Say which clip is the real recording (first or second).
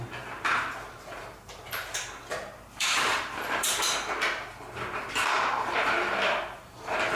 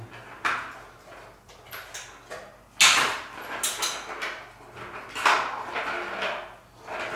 second